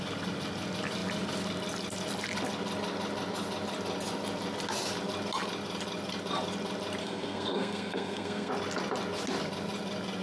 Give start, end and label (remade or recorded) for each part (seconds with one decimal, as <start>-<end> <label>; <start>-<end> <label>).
0.0-7.0 recorded; 7.0-8.5 remade; 8.5-10.2 recorded